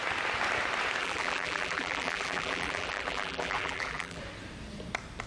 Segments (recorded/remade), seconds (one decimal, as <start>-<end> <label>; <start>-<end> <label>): 0.0-1.0 recorded; 1.0-4.2 remade; 4.2-5.3 recorded